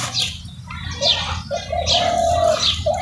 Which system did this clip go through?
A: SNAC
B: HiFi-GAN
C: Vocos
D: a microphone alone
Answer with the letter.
D